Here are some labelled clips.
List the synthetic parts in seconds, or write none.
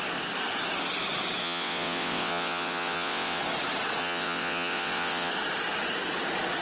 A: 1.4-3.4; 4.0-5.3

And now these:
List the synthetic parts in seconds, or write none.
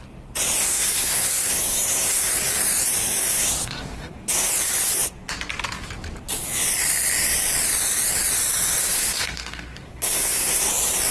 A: 0.6-2.3; 3.2-4.5; 8.8-10.7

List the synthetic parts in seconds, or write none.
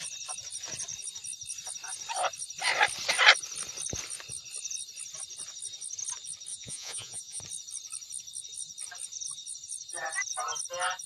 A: 6.5-7.4